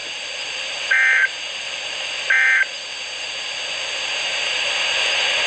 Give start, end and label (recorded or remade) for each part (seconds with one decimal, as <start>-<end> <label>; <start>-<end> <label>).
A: 0.0-2.6 remade; 2.6-5.5 recorded